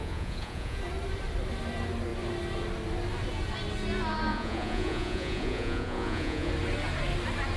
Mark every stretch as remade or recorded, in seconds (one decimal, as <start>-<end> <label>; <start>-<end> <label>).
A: 0.0-0.8 remade; 0.8-4.3 recorded; 4.3-6.5 remade; 6.5-7.6 recorded